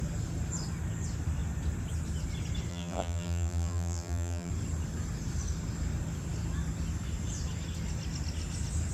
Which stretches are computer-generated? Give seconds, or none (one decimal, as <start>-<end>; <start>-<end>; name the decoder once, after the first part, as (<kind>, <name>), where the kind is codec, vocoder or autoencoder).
2.7-4.5 (vocoder, BigVGAN v2)